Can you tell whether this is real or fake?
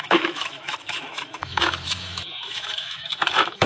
fake